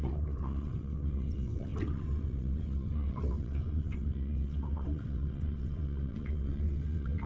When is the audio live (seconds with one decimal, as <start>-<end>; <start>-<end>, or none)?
none